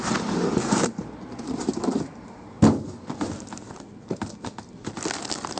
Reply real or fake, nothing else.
real